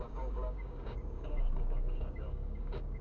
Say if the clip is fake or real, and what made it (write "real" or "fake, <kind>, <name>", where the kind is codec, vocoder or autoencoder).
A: fake, codec, DAC